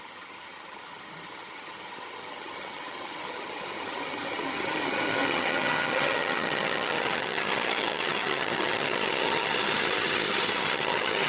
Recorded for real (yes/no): no